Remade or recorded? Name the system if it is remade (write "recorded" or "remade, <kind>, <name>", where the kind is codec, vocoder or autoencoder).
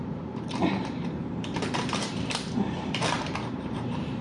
remade, vocoder, BigVGAN v2